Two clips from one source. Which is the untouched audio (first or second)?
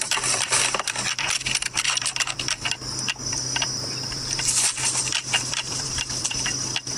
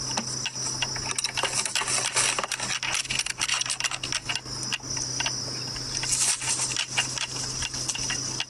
second